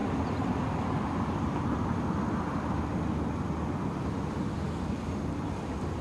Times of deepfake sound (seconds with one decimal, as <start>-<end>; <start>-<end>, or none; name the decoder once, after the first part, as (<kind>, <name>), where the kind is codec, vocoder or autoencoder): none